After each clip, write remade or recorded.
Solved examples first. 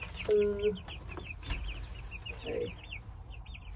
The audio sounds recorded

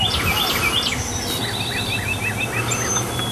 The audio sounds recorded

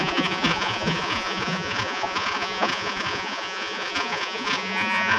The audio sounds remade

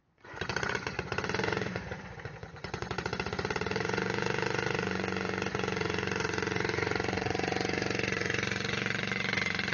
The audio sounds remade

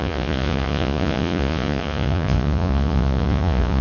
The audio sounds remade